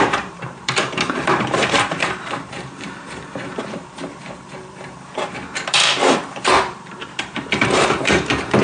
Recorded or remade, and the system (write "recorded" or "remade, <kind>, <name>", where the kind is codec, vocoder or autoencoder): remade, vocoder, BigVGAN v2